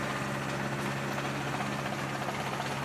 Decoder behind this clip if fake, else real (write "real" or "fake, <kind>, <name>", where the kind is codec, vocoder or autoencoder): real